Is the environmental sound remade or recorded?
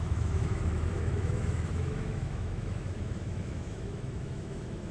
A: remade